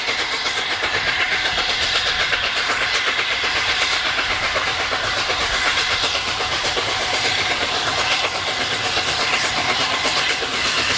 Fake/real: fake